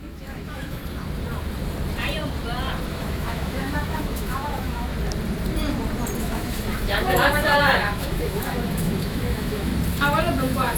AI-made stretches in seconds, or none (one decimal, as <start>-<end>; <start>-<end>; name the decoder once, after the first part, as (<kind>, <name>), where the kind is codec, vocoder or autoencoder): 0.0-0.8 (autoencoder, DAC-VAE); 2.9-4.9; 6.2-9.7; 10.4-10.8